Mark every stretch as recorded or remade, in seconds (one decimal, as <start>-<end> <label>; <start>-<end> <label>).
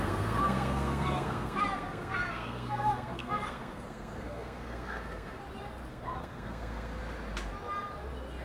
0.0-5.4 remade; 5.4-5.9 recorded; 5.9-7.0 remade; 7.0-8.4 recorded